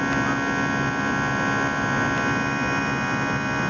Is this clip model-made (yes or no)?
no